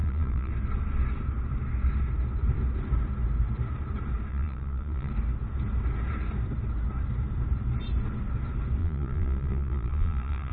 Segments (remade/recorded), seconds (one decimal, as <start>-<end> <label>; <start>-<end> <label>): 0.0-0.5 remade; 0.5-4.3 recorded; 4.3-5.1 remade; 5.1-8.8 recorded; 8.8-10.5 remade

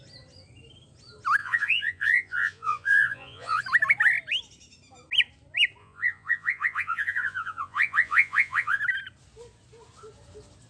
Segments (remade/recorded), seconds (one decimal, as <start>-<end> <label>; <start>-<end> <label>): 0.0-1.4 recorded; 1.4-3.6 remade; 3.6-5.8 recorded; 5.8-8.8 remade; 8.8-10.7 recorded

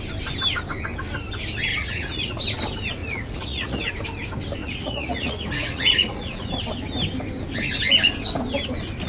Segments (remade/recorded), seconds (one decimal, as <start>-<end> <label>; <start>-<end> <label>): 0.0-1.7 recorded; 1.7-2.4 remade; 2.4-3.0 recorded; 3.0-3.9 remade; 3.9-4.6 recorded; 4.6-6.5 remade; 6.5-9.1 recorded

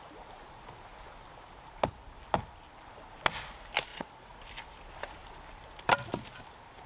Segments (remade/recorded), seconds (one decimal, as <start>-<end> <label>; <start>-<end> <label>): 0.0-3.9 recorded; 3.9-4.4 remade; 4.4-6.9 recorded

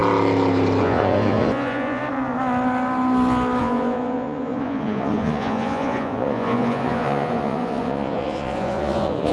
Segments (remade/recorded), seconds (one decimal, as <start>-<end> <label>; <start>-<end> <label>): 0.0-0.8 recorded; 0.8-2.0 remade; 2.0-3.6 recorded; 3.6-9.3 remade

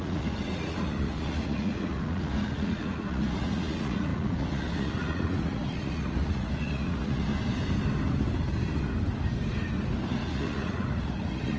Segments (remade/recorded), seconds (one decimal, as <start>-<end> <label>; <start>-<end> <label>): 0.0-7.3 remade; 7.3-10.1 recorded; 10.1-11.6 remade